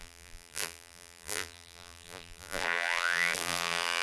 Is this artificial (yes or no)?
yes